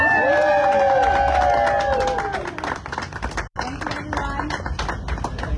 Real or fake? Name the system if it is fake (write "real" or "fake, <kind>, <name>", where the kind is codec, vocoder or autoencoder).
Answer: real